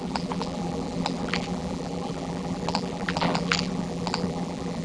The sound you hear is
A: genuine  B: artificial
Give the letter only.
B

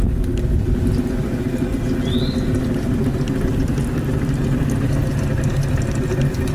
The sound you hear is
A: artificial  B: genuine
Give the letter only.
B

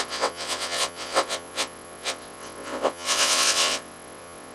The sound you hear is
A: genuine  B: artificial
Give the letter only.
B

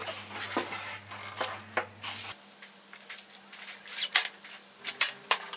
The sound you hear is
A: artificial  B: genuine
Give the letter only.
B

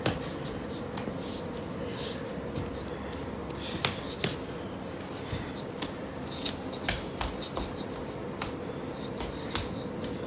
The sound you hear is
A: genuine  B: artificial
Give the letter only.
A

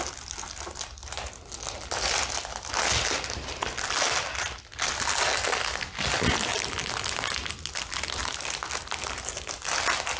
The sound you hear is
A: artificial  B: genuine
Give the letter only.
B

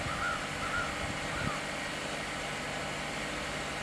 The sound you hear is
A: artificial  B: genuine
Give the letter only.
B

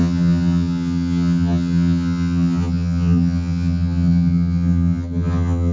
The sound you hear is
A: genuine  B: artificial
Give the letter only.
B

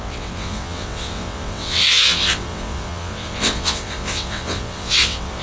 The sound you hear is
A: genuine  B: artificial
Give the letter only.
B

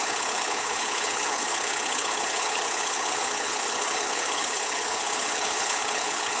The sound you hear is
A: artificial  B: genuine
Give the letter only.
A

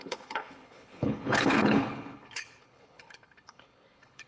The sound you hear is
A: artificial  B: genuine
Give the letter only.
A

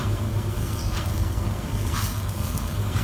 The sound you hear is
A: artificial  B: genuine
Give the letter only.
A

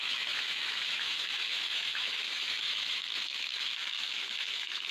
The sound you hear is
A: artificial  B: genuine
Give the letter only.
A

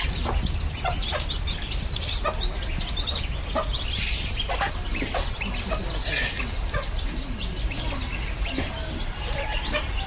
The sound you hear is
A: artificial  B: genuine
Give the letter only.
B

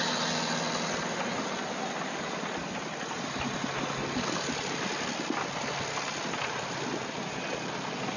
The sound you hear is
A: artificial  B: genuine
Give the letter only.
B